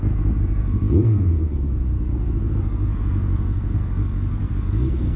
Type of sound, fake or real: fake